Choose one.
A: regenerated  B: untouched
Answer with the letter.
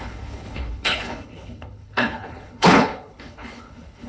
A